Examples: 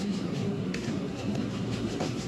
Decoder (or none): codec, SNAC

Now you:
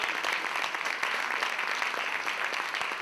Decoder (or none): none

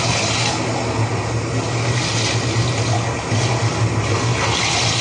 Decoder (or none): none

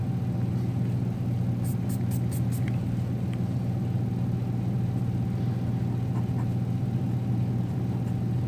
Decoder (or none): none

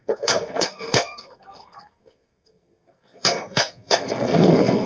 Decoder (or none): codec, SNAC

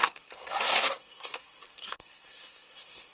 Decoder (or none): codec, SNAC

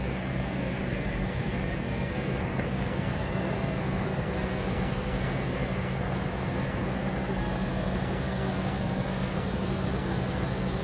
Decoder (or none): codec, SNAC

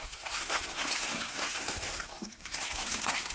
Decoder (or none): codec, SNAC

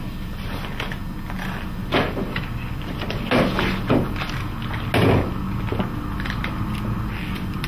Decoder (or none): none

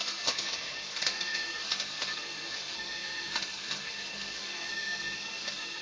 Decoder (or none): codec, SNAC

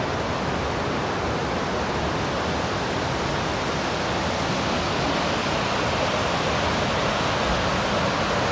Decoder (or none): none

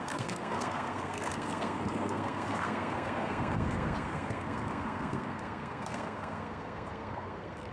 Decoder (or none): codec, SNAC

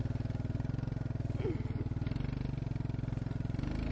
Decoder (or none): none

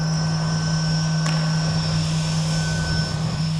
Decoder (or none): none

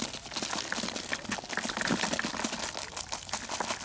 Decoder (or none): none